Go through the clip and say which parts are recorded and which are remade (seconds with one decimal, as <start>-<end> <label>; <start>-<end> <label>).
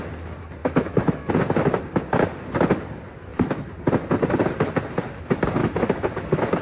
0.0-0.6 recorded; 0.6-1.3 remade; 1.3-5.6 recorded; 5.6-6.6 remade